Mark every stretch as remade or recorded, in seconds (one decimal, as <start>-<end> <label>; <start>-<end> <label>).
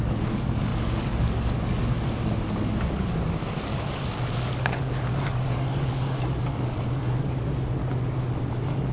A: 0.0-7.8 remade; 7.8-8.5 recorded; 8.5-8.9 remade